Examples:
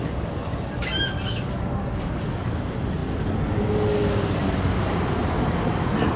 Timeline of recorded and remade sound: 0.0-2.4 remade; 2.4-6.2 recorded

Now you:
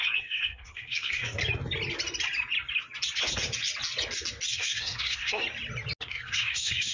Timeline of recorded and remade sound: 0.0-1.4 remade; 1.4-4.5 recorded; 4.5-5.4 remade; 5.4-6.0 recorded; 6.0-6.9 remade

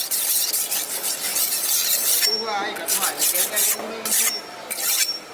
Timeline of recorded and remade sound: 0.0-1.3 remade; 1.3-4.4 recorded; 4.4-5.3 remade